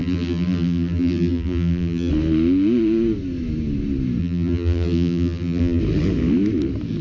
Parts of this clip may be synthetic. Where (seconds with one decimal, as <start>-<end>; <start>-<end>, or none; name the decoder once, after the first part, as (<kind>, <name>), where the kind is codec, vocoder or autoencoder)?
0.0-2.1 (vocoder, BigVGAN v2); 4.2-5.8